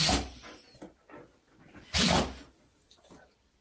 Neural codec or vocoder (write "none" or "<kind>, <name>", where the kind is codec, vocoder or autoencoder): none